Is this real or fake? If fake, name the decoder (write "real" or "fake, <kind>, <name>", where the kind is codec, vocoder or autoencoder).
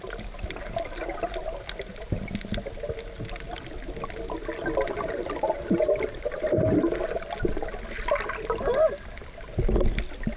real